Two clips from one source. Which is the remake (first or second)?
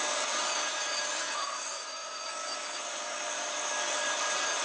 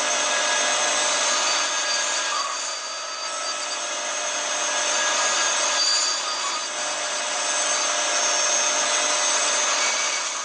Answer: first